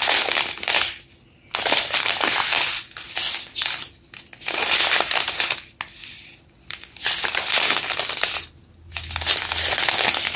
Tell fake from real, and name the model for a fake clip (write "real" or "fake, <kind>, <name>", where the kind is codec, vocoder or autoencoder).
real